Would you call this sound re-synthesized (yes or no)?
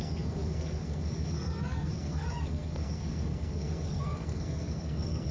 yes